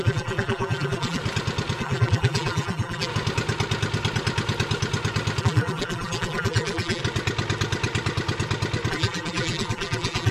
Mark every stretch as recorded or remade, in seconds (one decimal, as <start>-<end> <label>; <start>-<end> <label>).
0.0-1.2 remade; 1.2-1.8 recorded; 1.8-3.1 remade; 3.1-5.4 recorded; 5.4-7.0 remade; 7.0-8.9 recorded; 8.9-10.3 remade